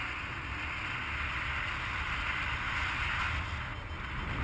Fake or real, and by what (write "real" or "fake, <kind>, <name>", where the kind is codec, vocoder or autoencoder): real